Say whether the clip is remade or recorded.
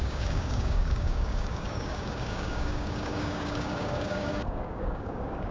remade